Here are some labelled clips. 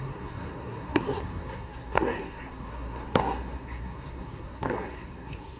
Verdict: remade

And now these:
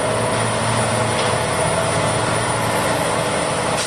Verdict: recorded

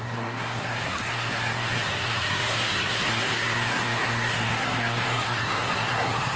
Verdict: remade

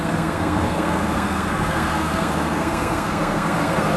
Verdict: remade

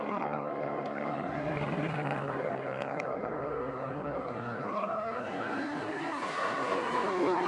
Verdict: remade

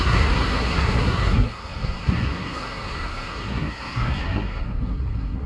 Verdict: remade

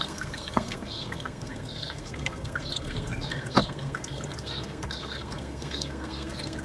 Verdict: remade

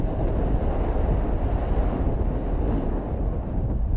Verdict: recorded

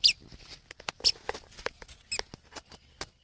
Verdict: recorded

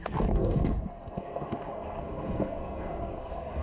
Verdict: remade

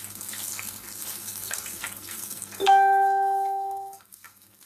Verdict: remade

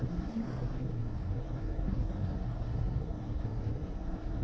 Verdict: remade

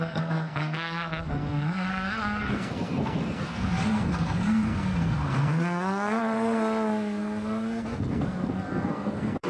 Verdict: remade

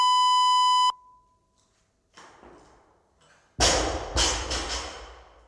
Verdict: recorded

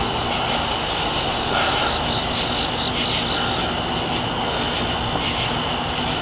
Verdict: recorded